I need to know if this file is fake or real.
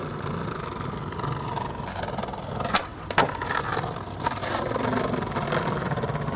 real